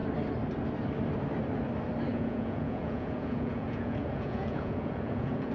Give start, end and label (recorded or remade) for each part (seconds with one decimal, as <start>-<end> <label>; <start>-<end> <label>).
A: 0.0-2.1 recorded; 2.1-5.5 remade